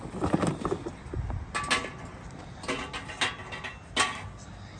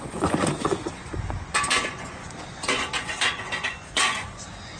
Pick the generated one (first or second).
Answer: second